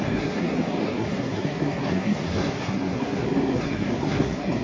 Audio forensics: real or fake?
fake